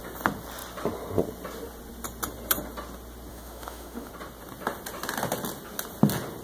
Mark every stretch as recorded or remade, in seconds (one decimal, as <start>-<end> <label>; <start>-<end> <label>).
0.0-3.3 recorded; 3.3-4.1 remade; 4.1-6.4 recorded